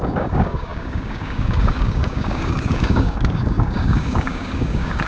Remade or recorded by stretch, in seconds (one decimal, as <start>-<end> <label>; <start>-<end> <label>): 0.0-5.1 remade